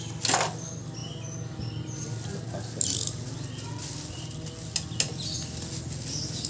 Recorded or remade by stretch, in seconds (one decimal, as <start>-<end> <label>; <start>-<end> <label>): 0.0-6.5 recorded